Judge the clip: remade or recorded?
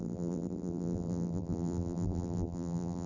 remade